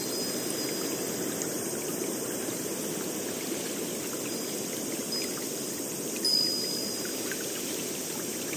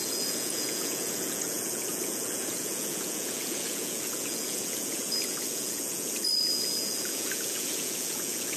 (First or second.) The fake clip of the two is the second